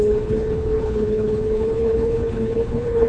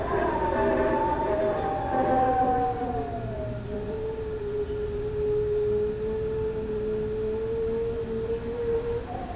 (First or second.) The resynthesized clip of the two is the first